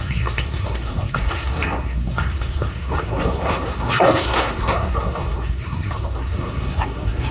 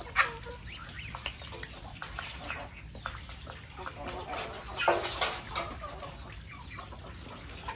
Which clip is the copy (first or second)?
first